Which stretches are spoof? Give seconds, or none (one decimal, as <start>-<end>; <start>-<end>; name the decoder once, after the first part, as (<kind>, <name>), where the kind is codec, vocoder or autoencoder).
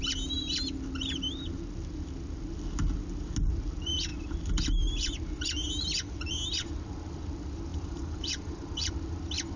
7.7-8.9 (vocoder, BigVGAN v2)